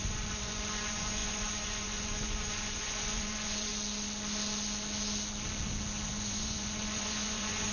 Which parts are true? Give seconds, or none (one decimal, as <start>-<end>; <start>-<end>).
3.7-6.1

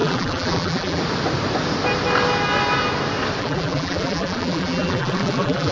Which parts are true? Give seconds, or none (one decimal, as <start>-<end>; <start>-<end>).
1.0-3.4

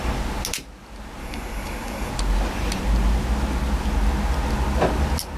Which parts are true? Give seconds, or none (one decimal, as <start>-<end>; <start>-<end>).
0.0-1.2; 2.1-5.4

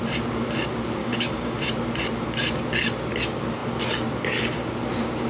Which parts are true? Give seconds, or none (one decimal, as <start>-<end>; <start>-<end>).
0.0-1.0; 1.6-5.3

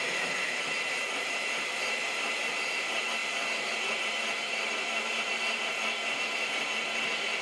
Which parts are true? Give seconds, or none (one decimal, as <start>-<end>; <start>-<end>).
none

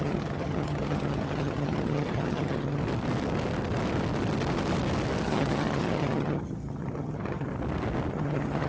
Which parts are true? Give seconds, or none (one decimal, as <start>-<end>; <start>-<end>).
2.8-5.2; 7.5-8.1

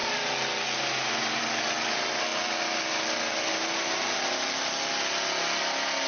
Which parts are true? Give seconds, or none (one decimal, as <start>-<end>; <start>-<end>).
0.0-6.1